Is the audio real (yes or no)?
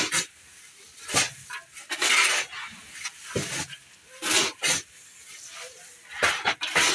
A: yes